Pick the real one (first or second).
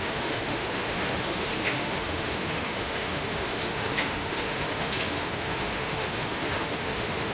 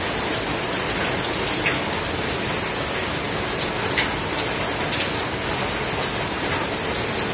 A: second